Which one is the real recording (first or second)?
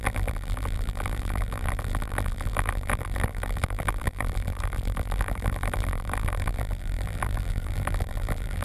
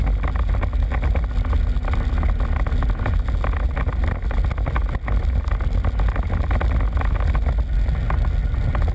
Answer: second